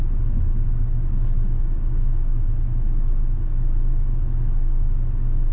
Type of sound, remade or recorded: recorded